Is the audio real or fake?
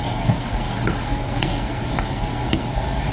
fake